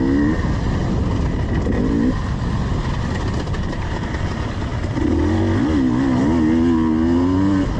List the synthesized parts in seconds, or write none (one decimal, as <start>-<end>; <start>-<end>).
none